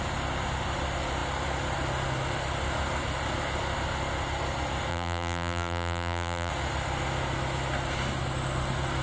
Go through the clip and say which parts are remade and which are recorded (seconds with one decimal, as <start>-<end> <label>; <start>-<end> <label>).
0.0-4.9 recorded; 4.9-6.5 remade; 6.5-9.0 recorded